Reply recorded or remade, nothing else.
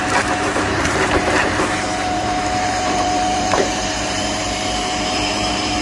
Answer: remade